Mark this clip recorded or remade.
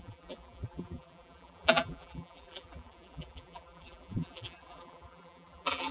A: remade